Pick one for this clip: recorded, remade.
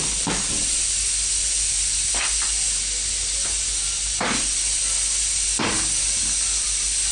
recorded